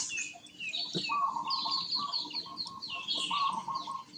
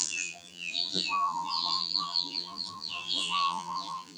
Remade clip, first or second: second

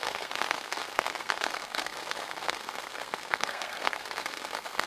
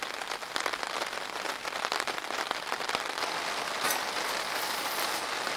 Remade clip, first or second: first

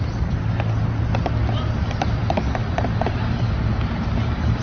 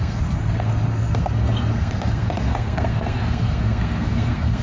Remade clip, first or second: second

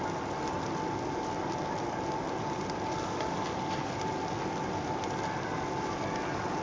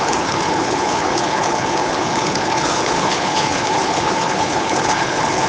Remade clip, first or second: second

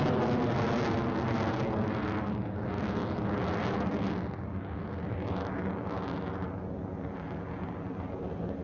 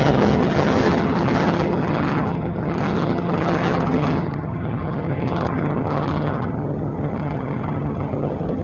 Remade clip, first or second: second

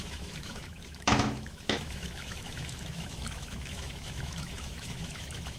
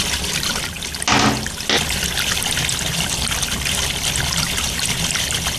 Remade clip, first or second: first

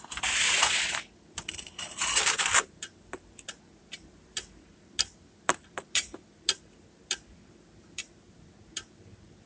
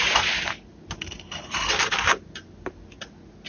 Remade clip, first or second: first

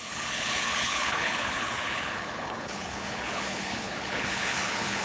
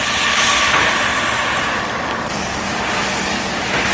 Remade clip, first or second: first